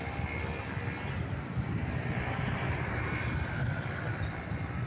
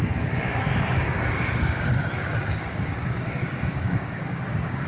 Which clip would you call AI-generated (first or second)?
second